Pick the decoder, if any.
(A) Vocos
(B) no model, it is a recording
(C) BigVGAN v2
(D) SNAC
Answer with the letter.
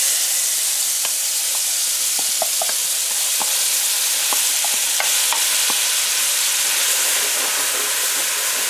B